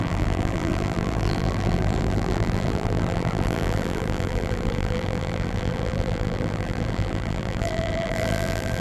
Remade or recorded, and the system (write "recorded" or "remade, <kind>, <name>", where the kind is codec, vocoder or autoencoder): remade, vocoder, BigVGAN v2